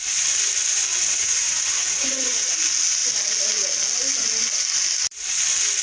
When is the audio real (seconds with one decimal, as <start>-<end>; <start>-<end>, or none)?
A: 0.0-0.9; 2.6-5.8